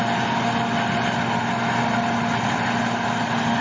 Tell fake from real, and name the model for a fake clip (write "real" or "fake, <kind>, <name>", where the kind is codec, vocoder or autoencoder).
real